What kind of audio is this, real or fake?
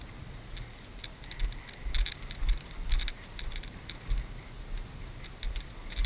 real